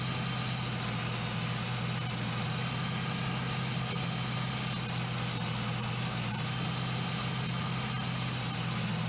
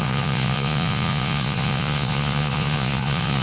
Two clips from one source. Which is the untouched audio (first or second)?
first